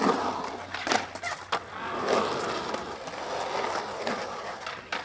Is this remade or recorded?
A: recorded